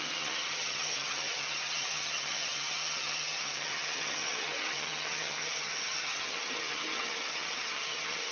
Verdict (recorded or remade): remade